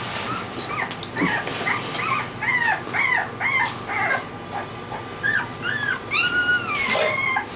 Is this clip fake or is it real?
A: real